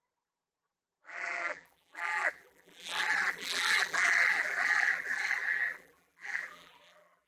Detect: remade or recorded remade